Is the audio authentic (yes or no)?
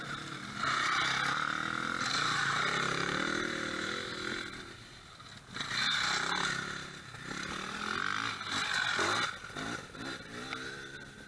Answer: yes